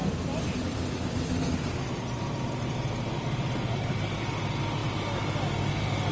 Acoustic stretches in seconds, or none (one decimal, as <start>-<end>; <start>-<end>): 0.0-2.6; 4.8-6.1